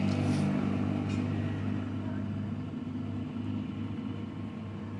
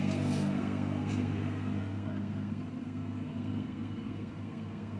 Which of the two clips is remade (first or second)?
second